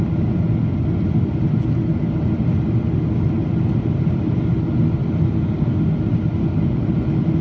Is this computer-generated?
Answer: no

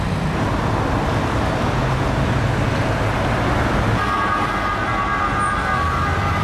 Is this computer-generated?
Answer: no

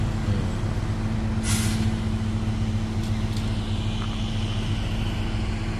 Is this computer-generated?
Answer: no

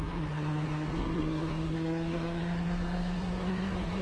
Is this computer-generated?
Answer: yes